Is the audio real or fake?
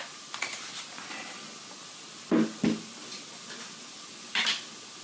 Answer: real